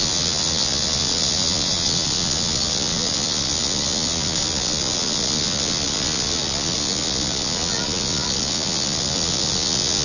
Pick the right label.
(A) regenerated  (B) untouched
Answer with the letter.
A